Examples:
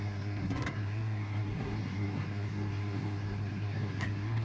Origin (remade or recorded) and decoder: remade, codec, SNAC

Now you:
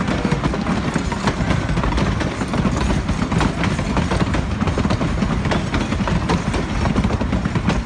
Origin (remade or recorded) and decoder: recorded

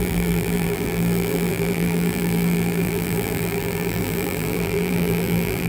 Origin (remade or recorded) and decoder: remade, vocoder, BigVGAN v2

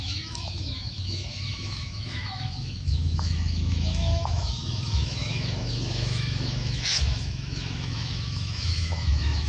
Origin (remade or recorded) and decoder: remade, autoencoder, DAC-VAE